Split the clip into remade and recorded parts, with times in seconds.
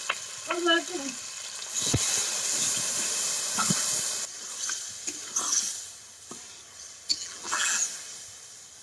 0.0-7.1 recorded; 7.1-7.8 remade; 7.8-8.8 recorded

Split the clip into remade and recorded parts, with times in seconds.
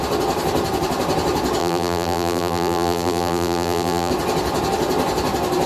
0.0-1.6 recorded; 1.6-4.1 remade; 4.1-5.7 recorded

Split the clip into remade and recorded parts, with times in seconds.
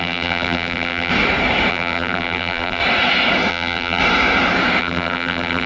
0.0-1.1 remade; 1.1-1.7 recorded; 1.7-2.8 remade; 2.8-3.5 recorded; 3.5-4.0 remade; 4.0-4.8 recorded; 4.8-5.7 remade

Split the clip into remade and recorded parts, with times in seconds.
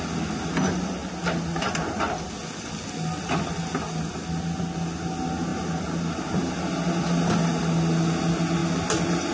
0.0-5.5 recorded; 5.5-6.5 remade; 6.5-9.3 recorded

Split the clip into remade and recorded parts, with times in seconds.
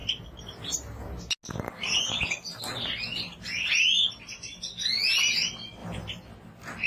0.0-4.1 recorded; 4.1-5.8 remade; 5.8-6.9 recorded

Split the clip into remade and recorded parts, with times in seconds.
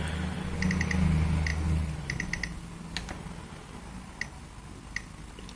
0.0-1.5 recorded; 1.5-2.2 remade; 2.2-5.6 recorded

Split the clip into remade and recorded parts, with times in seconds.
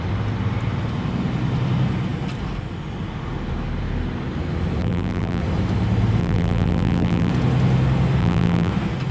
0.0-4.8 recorded; 4.8-5.4 remade; 5.4-6.2 recorded; 6.2-7.3 remade; 7.3-8.2 recorded; 8.2-8.7 remade; 8.7-9.1 recorded